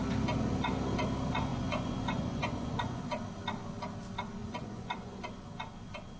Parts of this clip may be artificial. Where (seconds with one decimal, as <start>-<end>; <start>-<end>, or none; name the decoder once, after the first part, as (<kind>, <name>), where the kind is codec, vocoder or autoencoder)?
1.5-3.0 (vocoder, Vocos); 4.4-5.2